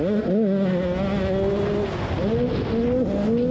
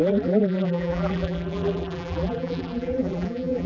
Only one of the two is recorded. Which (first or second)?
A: first